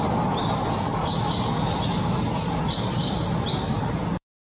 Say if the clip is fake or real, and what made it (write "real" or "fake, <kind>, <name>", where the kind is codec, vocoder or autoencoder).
real